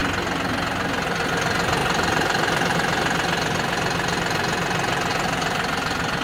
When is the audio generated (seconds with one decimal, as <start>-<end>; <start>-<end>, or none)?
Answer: 1.8-2.7; 5.1-6.2